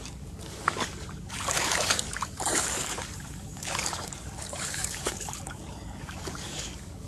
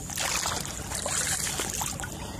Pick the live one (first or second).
second